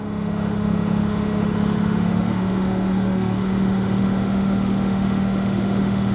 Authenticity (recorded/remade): remade